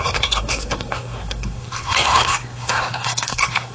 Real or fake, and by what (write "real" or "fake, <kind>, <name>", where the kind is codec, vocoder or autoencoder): fake, codec, SNAC